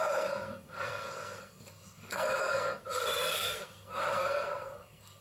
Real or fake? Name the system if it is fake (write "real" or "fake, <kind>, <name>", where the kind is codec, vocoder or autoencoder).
fake, codec, SNAC